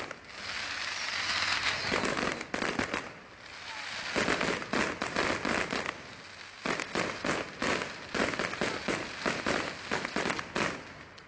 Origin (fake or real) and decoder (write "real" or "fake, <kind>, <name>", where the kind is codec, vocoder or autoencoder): real